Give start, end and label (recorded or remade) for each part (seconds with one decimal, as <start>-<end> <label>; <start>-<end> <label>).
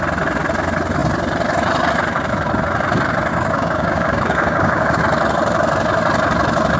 0.0-3.3 recorded; 3.3-5.0 remade; 5.0-6.8 recorded